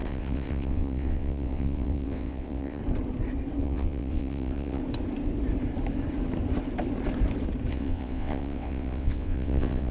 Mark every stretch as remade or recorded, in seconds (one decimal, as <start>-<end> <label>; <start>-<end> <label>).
0.0-2.8 remade; 2.8-3.6 recorded; 3.6-4.8 remade; 4.8-7.7 recorded; 7.7-9.9 remade